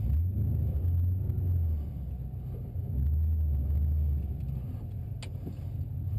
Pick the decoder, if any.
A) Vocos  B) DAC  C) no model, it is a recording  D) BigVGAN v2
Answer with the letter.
C